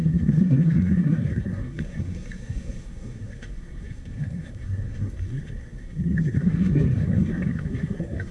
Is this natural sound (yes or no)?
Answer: no